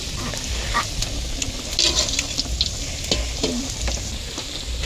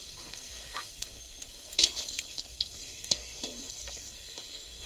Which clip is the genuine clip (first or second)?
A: first